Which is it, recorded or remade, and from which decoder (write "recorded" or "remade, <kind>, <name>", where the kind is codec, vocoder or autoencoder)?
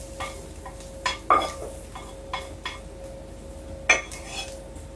recorded